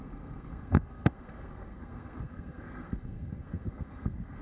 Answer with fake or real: fake